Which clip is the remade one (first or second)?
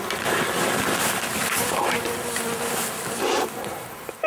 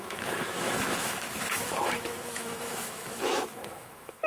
second